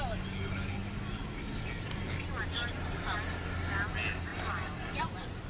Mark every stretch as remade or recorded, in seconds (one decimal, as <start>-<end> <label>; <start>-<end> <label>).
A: 0.0-5.5 recorded